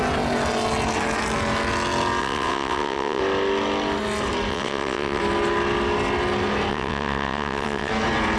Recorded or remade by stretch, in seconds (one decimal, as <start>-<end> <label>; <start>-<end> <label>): 0.0-2.2 recorded; 2.2-3.2 remade; 3.2-4.5 recorded; 4.5-5.2 remade; 5.2-6.7 recorded; 6.7-7.9 remade; 7.9-8.4 recorded

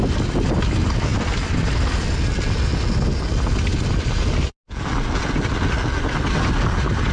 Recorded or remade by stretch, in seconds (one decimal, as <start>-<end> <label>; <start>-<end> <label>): 0.0-7.1 recorded